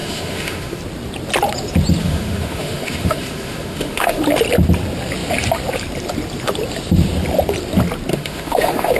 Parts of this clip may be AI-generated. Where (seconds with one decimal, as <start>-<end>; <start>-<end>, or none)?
0.0-0.8; 2.0-4.2; 8.1-9.0